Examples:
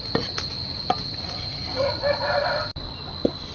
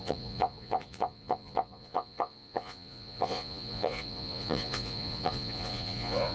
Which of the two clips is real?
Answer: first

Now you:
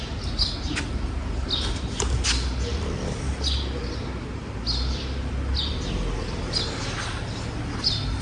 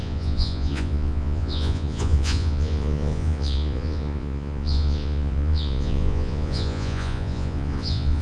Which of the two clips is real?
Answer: first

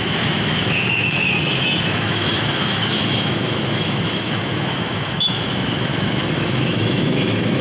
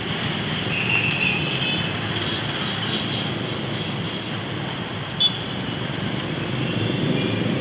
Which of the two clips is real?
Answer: second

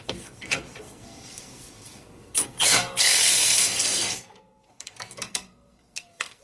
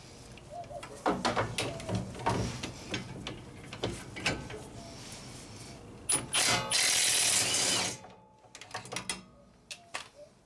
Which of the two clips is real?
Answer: second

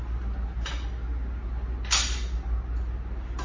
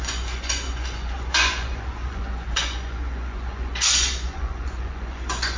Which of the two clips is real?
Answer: first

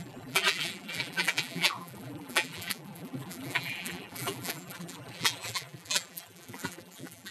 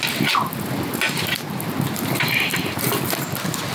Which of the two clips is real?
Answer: second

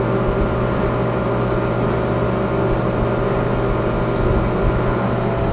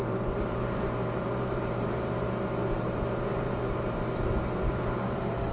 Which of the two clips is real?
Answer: first